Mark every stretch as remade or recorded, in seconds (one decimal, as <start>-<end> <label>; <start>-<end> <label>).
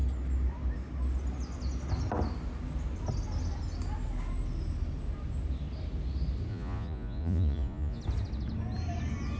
0.0-6.5 recorded; 6.5-8.0 remade; 8.0-9.4 recorded